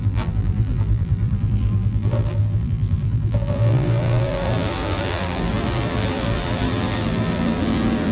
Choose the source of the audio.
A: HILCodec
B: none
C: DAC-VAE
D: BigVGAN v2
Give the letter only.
D